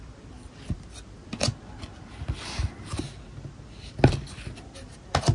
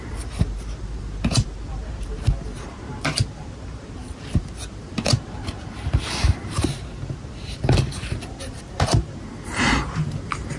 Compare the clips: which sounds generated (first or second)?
second